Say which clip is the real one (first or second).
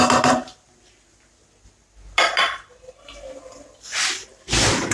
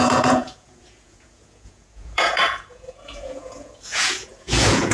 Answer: first